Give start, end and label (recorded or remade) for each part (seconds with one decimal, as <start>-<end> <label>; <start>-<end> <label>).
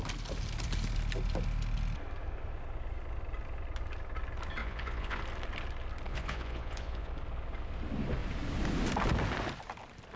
0.0-4.6 recorded; 4.6-5.2 remade; 5.2-6.1 recorded; 6.1-7.1 remade; 7.1-10.2 recorded